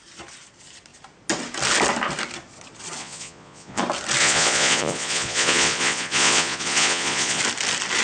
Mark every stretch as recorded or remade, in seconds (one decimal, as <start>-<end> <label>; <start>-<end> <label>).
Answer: 0.0-3.0 recorded; 3.0-3.8 remade; 3.8-4.2 recorded; 4.2-7.4 remade; 7.4-8.0 recorded